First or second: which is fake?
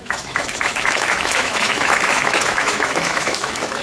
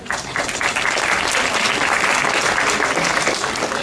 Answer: first